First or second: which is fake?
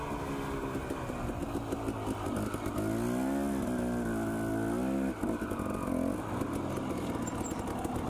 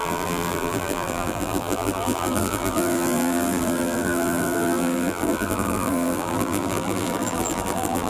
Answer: second